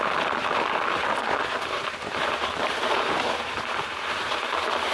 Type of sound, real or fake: fake